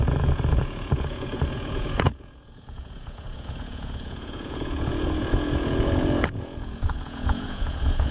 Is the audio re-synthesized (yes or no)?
yes